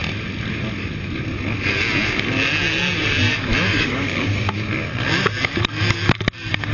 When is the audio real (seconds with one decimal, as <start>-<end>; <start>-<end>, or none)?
0.0-3.7; 4.7-6.7